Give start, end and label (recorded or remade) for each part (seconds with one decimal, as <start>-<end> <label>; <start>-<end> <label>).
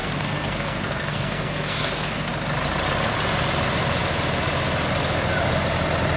0.0-2.3 remade; 2.3-6.2 recorded